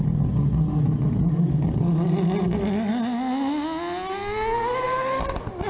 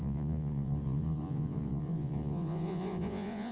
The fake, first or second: second